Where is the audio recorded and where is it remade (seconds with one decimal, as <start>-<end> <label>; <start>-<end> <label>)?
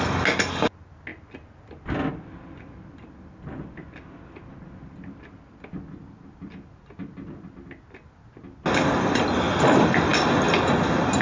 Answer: 0.0-11.2 recorded